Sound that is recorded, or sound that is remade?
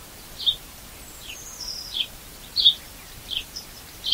remade